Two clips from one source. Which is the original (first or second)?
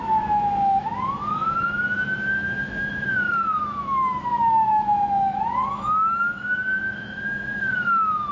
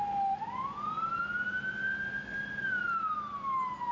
second